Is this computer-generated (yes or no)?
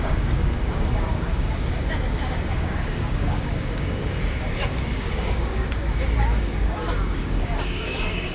yes